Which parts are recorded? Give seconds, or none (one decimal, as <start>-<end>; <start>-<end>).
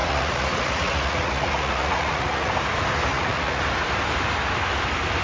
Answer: 2.5-3.1; 3.6-5.2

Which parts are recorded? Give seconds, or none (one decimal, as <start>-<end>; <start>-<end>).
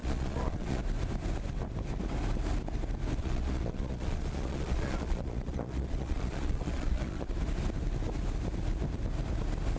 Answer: 0.8-3.2; 7.3-9.8